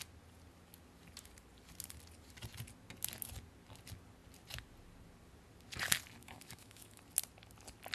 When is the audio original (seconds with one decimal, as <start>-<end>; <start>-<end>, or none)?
0.0-6.2; 7.0-7.9